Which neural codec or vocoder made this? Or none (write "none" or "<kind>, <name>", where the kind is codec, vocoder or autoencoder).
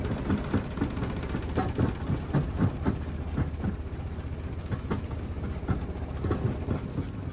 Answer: none